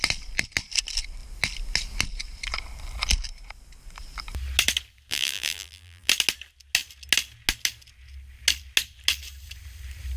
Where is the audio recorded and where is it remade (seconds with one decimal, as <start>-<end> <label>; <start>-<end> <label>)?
0.0-5.1 recorded; 5.1-6.1 remade; 6.1-10.2 recorded